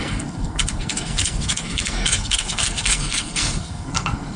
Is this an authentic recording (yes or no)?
no